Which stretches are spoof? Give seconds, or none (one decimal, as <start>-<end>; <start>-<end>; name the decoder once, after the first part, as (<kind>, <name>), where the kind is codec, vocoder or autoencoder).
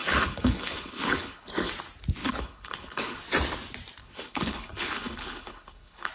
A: 0.0-1.7 (codec, HILCodec); 2.2-3.2; 4.0-6.1